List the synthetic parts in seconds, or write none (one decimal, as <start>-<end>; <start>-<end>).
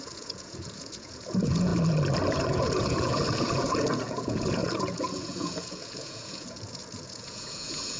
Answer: 0.0-1.7; 2.3-8.0